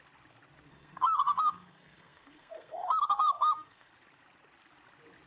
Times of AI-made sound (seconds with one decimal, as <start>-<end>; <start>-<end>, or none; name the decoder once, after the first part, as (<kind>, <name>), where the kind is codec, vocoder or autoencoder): 0.7-3.9 (codec, SNAC)